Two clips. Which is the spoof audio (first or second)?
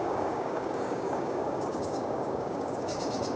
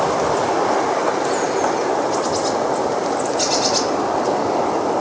first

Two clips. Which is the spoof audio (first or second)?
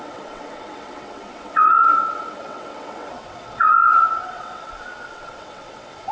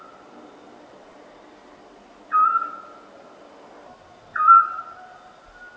first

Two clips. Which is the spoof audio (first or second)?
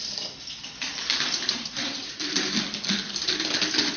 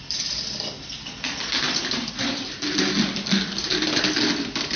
first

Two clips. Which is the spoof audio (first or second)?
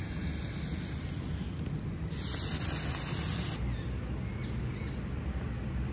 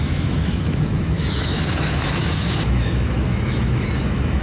second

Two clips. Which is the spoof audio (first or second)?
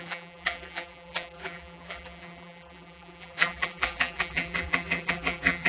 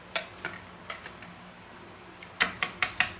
first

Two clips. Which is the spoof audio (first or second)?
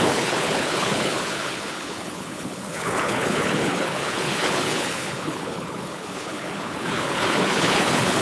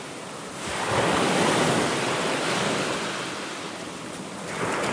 first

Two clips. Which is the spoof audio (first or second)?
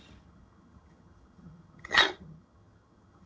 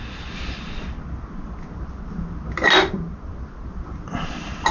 first